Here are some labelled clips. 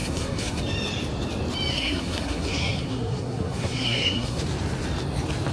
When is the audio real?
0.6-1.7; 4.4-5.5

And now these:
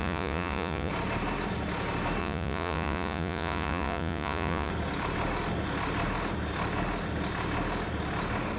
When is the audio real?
0.9-2.2; 4.7-8.6

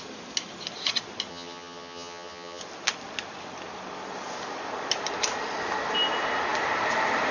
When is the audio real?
0.0-1.3; 2.6-7.3

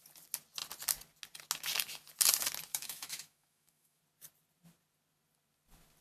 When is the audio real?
0.0-2.7; 4.0-6.0

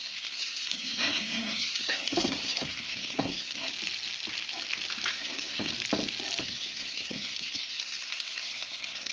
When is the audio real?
3.7-5.1; 5.7-6.4

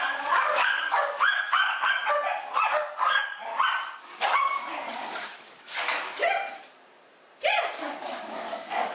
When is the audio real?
2.0-2.7; 3.5-4.0; 6.1-7.7

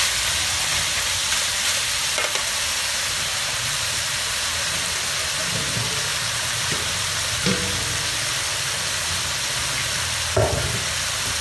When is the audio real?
0.0-1.2; 5.0-6.1; 7.8-11.4